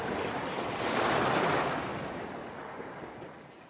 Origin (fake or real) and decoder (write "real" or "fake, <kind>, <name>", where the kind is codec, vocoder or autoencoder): real